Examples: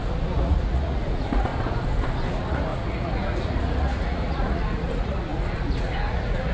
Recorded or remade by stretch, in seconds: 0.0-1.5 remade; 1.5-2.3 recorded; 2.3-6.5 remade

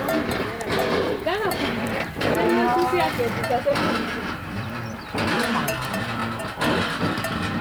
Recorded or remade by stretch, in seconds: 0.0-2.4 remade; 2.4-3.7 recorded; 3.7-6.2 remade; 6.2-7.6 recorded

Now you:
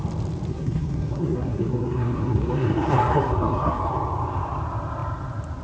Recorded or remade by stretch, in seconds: 0.0-0.5 recorded; 0.5-3.9 remade; 3.9-5.6 recorded